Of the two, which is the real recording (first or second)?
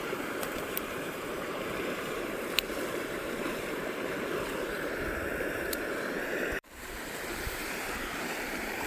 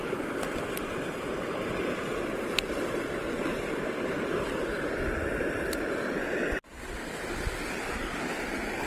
second